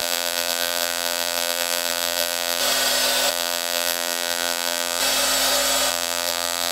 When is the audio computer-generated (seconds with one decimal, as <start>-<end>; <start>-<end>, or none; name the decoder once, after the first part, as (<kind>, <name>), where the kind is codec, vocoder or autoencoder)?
0.0-2.6 (vocoder, BigVGAN v2); 3.3-5.0; 5.9-6.7